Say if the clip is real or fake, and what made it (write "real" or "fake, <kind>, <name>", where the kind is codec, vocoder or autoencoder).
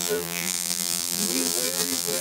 fake, vocoder, BigVGAN v2